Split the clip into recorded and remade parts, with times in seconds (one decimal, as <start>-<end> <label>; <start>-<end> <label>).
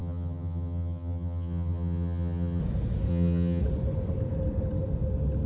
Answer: 0.0-2.6 remade; 2.6-3.1 recorded; 3.1-3.6 remade; 3.6-5.5 recorded